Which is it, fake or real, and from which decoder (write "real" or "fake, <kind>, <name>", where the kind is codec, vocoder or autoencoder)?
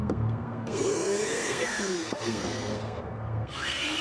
fake, codec, SNAC